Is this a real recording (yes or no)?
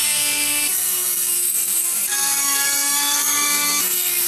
no